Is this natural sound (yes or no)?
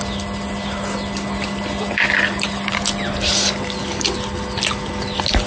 yes